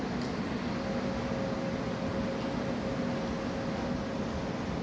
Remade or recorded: recorded